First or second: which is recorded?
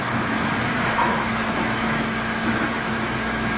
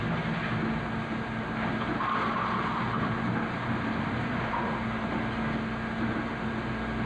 second